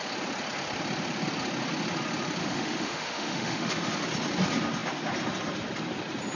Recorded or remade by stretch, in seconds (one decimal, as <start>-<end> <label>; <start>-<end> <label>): 0.0-2.4 recorded; 2.4-3.9 remade; 3.9-6.4 recorded